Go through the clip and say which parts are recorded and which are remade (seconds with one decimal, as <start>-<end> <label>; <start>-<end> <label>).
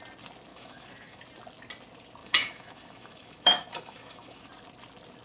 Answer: 0.0-0.5 recorded; 0.5-1.2 remade; 1.2-2.2 recorded; 2.2-4.5 remade; 4.5-5.2 recorded